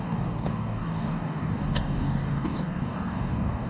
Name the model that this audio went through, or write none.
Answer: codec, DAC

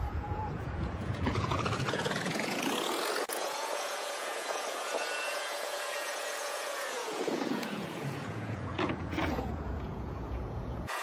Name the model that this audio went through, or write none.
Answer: vocoder, Vocos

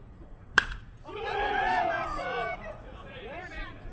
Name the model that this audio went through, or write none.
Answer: vocoder, Vocos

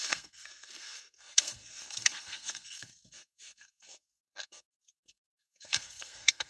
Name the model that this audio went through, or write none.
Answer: codec, SNAC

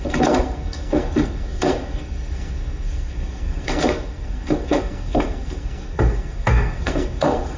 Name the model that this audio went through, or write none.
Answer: codec, SNAC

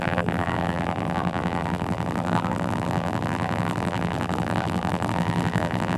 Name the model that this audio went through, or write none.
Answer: vocoder, BigVGAN v2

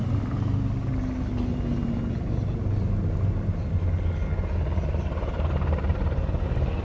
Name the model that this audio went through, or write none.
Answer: none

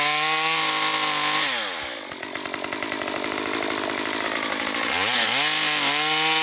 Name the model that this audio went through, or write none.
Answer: none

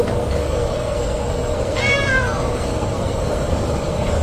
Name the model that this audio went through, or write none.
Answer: codec, SNAC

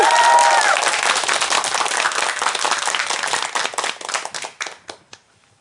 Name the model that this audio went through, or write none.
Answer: none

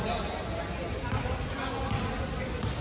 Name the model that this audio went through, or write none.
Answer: none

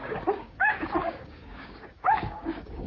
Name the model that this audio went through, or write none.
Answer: codec, DAC